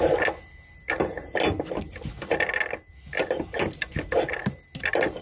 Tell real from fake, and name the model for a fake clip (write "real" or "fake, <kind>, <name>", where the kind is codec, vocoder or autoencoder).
real